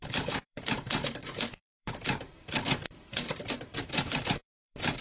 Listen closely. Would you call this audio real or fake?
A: fake